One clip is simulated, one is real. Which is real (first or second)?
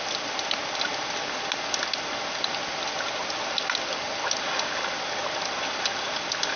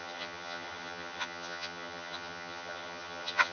first